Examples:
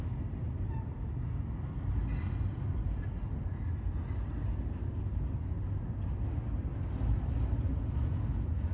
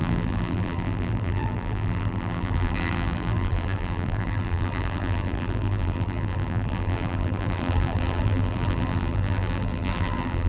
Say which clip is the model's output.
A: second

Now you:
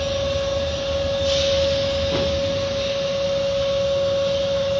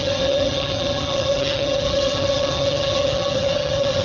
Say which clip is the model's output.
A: second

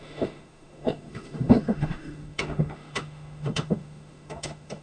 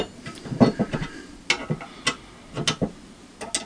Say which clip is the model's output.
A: first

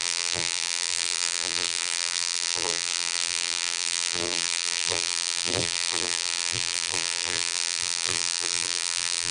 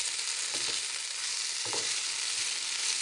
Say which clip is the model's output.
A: first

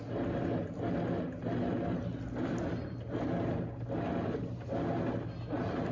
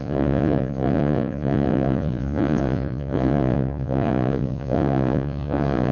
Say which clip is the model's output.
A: second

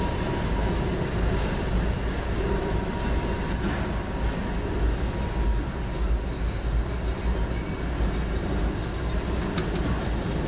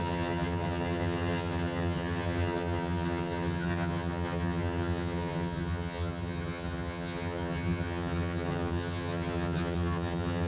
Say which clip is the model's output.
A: second